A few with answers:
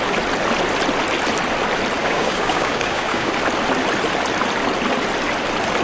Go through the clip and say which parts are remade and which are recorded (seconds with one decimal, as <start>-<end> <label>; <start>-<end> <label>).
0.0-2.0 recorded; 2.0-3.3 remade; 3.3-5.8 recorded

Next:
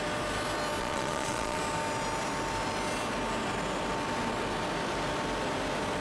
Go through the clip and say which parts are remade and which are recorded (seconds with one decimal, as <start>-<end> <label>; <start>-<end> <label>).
0.0-0.8 recorded; 0.8-1.6 remade; 1.6-6.0 recorded

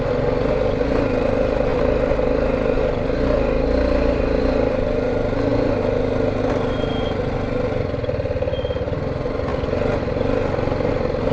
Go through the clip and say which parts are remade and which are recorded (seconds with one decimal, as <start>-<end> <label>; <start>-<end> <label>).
0.0-11.3 recorded

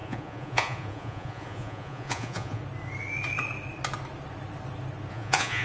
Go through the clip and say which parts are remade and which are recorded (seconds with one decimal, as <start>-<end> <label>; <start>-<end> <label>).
0.0-2.6 remade; 2.6-5.1 recorded; 5.1-5.6 remade

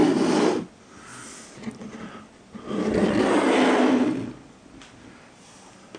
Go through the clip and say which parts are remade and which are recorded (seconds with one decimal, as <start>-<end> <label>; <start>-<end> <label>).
0.0-6.0 recorded

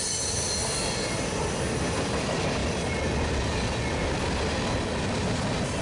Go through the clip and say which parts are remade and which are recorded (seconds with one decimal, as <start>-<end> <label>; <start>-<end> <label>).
0.0-5.8 recorded